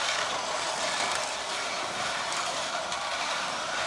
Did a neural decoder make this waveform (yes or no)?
no